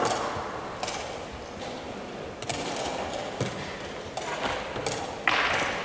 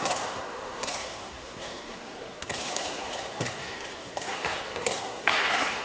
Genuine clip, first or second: first